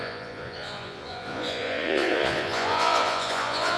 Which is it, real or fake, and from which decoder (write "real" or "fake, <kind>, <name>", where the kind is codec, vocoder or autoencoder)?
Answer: fake, vocoder, Vocos